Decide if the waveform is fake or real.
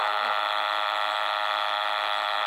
fake